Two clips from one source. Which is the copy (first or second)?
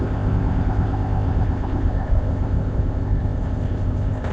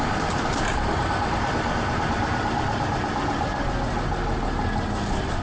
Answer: first